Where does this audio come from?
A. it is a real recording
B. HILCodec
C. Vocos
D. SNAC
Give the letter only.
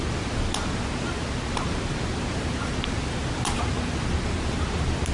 A